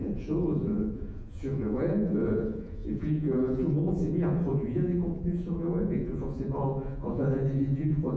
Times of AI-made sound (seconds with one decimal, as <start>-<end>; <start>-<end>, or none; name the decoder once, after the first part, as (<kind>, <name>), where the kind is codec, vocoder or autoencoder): 0.0-8.2 (vocoder, Vocos)